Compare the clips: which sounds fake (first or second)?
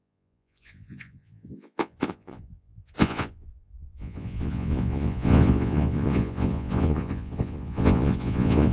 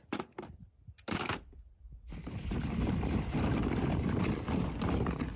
first